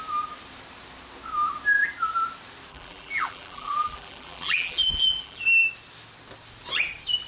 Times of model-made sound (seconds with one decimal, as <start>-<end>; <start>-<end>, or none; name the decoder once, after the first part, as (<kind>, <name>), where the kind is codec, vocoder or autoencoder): 2.7-5.7 (vocoder, BigVGAN v2)